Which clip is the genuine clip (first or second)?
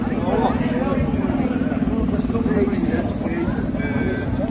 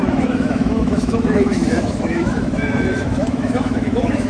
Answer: first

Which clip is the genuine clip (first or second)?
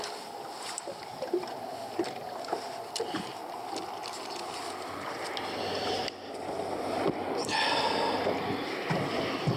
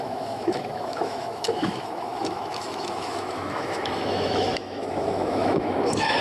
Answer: first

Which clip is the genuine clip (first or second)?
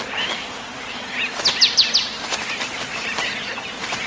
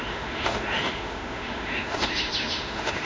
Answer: first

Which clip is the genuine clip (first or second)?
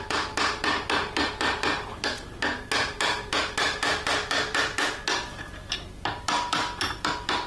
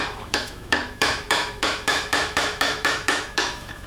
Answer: first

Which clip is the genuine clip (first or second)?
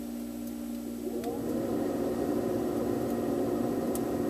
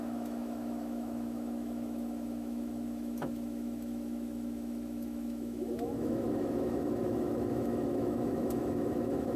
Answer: first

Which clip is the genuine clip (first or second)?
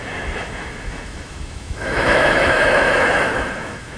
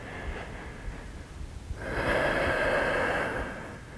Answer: second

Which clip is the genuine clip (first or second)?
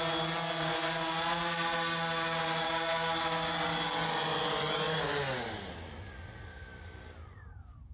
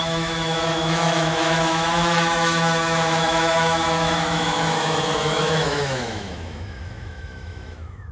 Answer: first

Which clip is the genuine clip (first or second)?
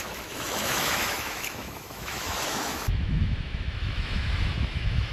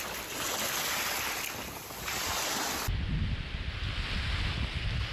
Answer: second